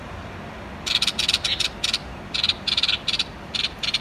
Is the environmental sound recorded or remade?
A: recorded